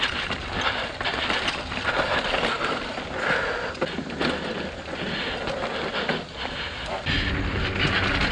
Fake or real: real